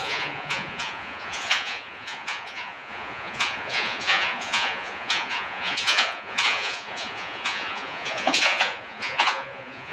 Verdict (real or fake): fake